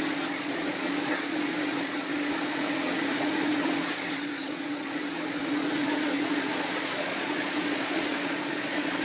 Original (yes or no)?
no